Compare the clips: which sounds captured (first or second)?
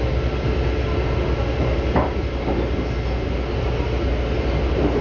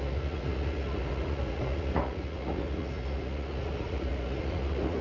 first